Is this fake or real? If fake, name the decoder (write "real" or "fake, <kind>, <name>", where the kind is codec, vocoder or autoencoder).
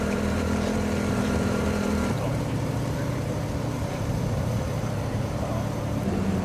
fake, vocoder, BigVGAN v2